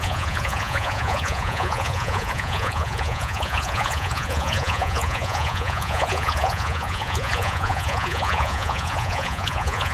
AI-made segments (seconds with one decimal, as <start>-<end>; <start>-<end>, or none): 0.0-9.9

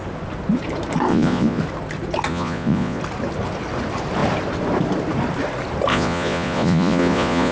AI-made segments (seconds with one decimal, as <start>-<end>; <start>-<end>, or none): 1.1-1.6; 2.3-3.0; 5.9-7.5

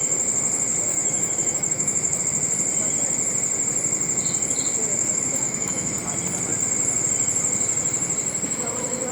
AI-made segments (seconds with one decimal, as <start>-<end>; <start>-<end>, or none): 0.9-2.2; 4.9-6.0

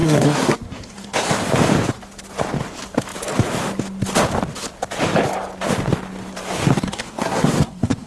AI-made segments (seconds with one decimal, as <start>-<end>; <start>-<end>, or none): 0.0-1.3; 6.8-8.1

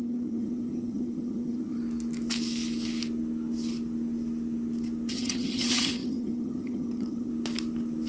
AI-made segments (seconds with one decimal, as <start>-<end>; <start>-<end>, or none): 0.0-1.8; 5.1-7.3